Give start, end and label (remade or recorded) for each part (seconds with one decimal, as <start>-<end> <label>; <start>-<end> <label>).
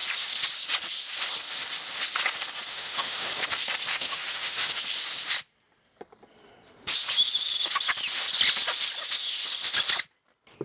0.0-2.7 recorded; 2.7-3.3 remade; 3.3-3.9 recorded; 3.9-4.8 remade; 4.8-10.6 recorded